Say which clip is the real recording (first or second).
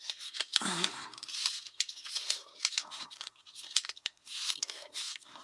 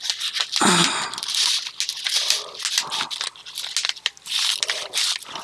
second